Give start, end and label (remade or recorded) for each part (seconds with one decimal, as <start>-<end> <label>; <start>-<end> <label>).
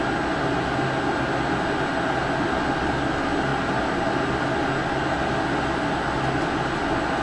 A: 0.0-7.2 recorded